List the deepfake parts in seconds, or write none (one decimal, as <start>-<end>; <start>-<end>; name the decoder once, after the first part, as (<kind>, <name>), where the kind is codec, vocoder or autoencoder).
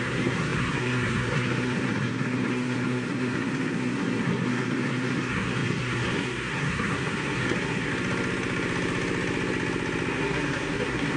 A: 0.0-7.9 (codec, SNAC); 10.1-11.2